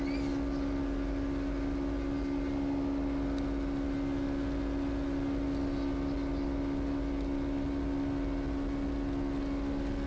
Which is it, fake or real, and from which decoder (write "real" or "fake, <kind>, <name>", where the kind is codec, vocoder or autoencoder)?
real